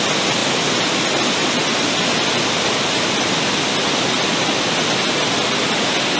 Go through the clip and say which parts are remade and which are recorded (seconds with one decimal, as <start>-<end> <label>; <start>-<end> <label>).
0.0-6.2 recorded